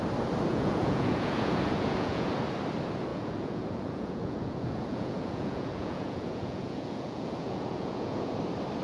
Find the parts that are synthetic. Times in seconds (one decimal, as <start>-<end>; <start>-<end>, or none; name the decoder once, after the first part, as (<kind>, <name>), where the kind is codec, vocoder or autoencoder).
0.5-2.3 (vocoder, Vocos); 3.1-8.3